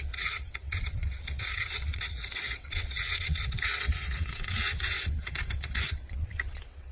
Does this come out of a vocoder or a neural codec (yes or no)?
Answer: yes